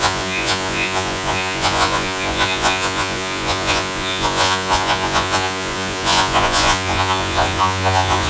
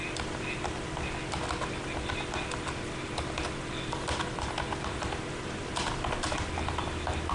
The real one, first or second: second